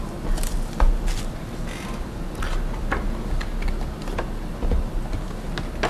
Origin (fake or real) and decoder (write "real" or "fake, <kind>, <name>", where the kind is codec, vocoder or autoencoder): real